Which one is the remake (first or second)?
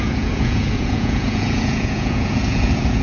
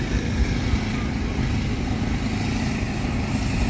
first